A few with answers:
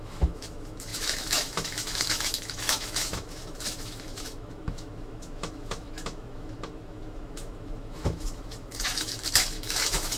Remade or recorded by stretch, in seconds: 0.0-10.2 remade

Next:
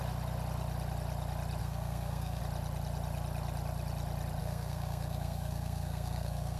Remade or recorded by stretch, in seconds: 0.0-1.6 recorded; 1.6-2.4 remade; 2.4-4.4 recorded; 4.4-6.6 remade

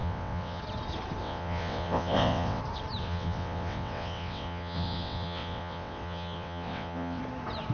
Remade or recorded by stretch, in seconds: 0.0-0.6 remade; 0.6-1.2 recorded; 1.2-2.6 remade; 2.6-3.0 recorded; 3.0-7.2 remade; 7.2-7.7 recorded

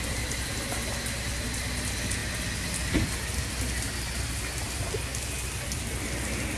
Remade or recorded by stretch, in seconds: 0.0-6.6 recorded

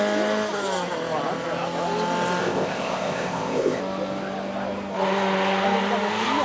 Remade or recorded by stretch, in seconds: 0.0-2.4 recorded; 2.4-3.8 remade; 3.8-6.4 recorded

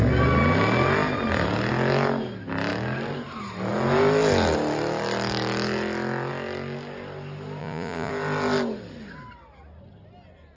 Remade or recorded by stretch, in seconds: 0.0-7.6 recorded; 7.6-8.1 remade; 8.1-10.6 recorded

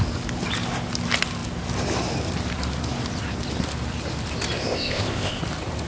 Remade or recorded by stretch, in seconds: 0.0-4.6 recorded; 4.6-5.4 remade; 5.4-5.9 recorded

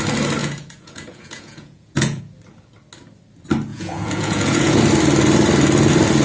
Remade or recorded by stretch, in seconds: 0.0-0.4 recorded; 0.4-2.2 remade; 2.2-3.7 recorded; 3.7-4.8 remade; 4.8-6.2 recorded